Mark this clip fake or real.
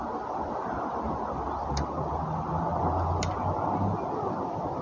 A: real